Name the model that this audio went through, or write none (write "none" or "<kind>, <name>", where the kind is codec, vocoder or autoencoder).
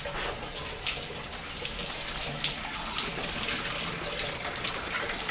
none